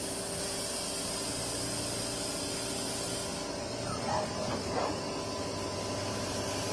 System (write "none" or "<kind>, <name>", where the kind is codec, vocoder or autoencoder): none